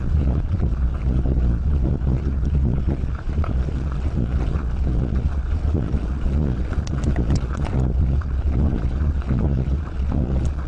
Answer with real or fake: fake